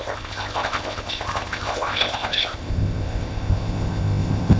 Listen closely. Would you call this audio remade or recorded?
remade